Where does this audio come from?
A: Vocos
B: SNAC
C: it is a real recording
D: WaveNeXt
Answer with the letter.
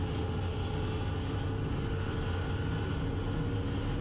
C